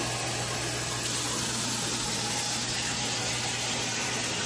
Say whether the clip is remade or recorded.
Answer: recorded